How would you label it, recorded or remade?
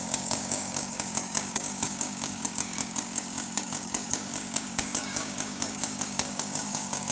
remade